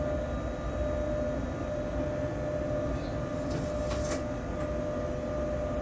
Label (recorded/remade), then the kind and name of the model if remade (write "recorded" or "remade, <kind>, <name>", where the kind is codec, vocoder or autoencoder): recorded